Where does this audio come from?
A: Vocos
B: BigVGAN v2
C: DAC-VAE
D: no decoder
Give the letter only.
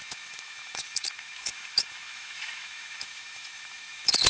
C